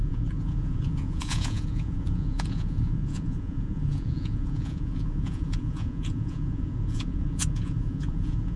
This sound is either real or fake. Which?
fake